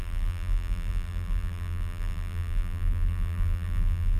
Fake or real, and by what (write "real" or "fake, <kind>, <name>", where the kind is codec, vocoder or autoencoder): fake, vocoder, BigVGAN v2